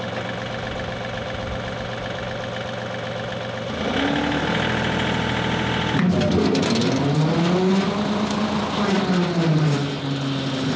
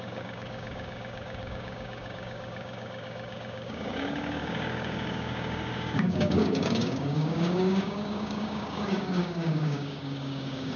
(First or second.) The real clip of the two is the first